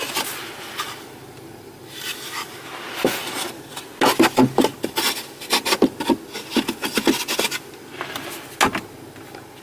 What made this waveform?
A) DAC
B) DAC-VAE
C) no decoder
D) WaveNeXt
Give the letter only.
C